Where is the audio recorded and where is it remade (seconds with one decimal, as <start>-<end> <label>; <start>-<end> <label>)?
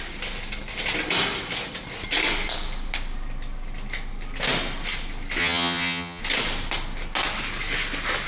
0.0-5.4 recorded; 5.4-6.2 remade; 6.2-8.3 recorded